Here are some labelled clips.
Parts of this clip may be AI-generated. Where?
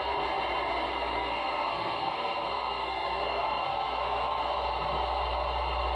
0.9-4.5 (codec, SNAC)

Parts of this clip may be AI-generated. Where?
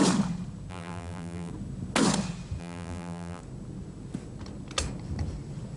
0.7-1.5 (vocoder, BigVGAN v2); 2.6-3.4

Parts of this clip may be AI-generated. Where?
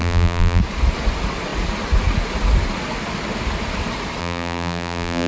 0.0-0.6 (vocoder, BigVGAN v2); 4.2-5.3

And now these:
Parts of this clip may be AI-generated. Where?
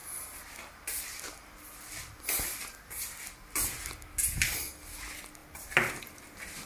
none